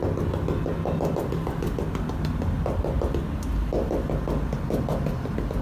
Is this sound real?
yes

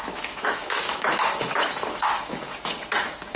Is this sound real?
no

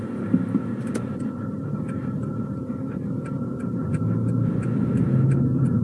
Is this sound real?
yes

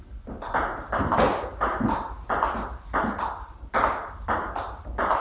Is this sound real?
yes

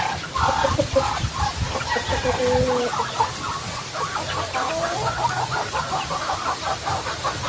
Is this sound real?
yes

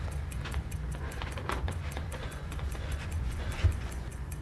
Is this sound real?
no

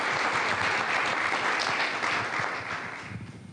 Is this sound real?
yes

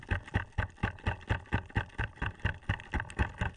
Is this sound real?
yes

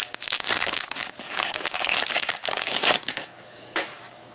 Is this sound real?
no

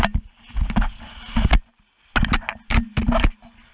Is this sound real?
yes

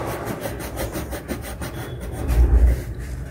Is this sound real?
yes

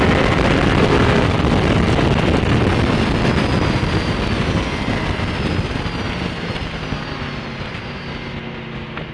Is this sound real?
yes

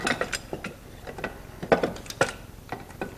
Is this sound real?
yes